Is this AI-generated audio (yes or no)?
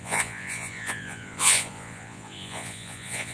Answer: yes